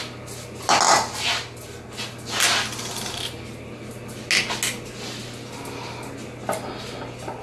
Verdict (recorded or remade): recorded